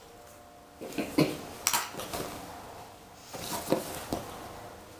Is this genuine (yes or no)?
yes